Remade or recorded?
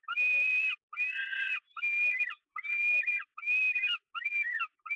recorded